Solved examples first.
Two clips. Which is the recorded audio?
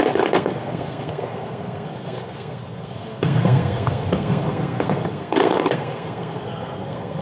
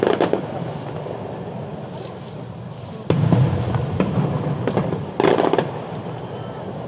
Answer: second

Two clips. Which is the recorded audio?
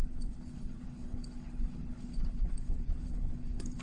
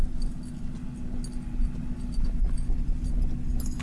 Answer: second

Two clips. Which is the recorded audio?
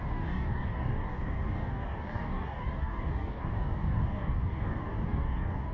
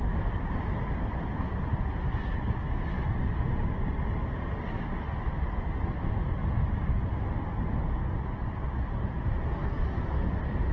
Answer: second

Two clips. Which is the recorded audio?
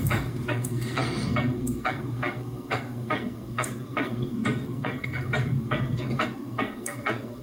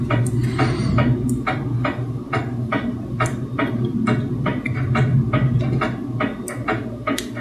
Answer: second